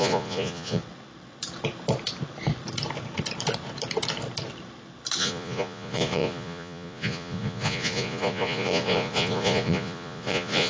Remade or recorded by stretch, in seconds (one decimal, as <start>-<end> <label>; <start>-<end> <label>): 0.0-0.8 remade; 0.8-5.2 recorded; 5.2-10.7 remade